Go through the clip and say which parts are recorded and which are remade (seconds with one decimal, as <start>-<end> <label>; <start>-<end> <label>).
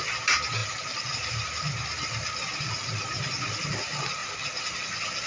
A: 0.0-5.3 recorded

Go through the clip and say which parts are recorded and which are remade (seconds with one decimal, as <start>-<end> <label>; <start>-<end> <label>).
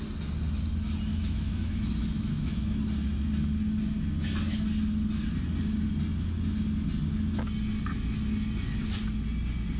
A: 0.0-1.1 recorded; 1.1-2.8 remade; 2.8-9.8 recorded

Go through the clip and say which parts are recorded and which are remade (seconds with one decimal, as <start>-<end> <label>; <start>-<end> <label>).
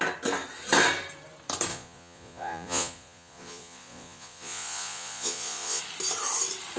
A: 0.0-1.7 recorded; 1.7-5.8 remade; 5.8-6.8 recorded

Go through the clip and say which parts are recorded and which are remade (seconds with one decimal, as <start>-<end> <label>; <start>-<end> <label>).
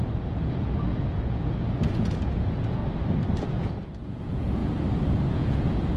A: 0.0-2.8 remade; 2.8-3.4 recorded; 3.4-4.6 remade; 4.6-5.3 recorded; 5.3-6.0 remade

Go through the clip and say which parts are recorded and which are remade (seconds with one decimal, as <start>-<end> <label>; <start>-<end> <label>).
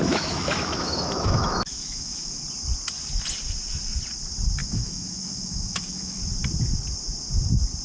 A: 0.0-2.4 remade; 2.4-4.6 recorded; 4.6-6.2 remade; 6.2-7.8 recorded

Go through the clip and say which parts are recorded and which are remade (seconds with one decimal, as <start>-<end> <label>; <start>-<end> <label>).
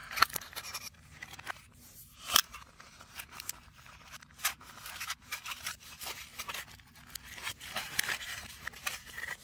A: 0.0-6.3 remade; 6.3-7.6 recorded; 7.6-9.4 remade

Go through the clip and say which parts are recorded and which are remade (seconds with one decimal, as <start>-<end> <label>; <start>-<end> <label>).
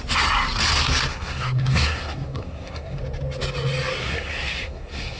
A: 0.0-1.1 recorded; 1.1-3.0 remade; 3.0-4.0 recorded; 4.0-5.2 remade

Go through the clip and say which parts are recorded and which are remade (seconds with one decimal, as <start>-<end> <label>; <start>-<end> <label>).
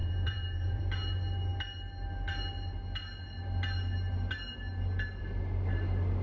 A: 0.0-0.8 remade; 0.8-6.2 recorded